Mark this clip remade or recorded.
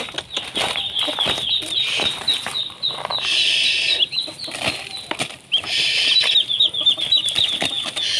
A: recorded